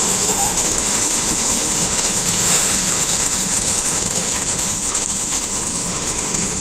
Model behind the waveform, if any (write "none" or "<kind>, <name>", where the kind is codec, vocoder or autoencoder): autoencoder, DAC-VAE